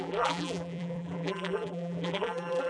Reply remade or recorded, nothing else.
remade